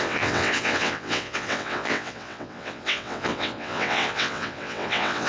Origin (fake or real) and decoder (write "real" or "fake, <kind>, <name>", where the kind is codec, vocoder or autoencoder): fake, vocoder, WaveNeXt